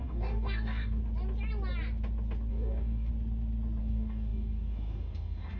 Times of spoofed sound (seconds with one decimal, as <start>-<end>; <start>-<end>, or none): 0.0-1.0; 2.5-3.1; 3.8-5.6